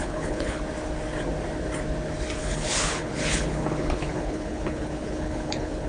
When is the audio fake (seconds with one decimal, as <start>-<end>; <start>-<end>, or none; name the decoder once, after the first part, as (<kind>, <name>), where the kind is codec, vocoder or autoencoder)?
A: 0.0-0.6 (codec, HILCodec); 2.4-5.9